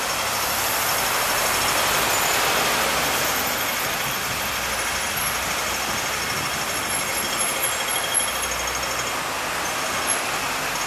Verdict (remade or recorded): recorded